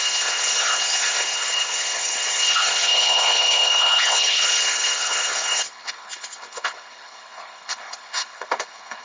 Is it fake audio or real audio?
fake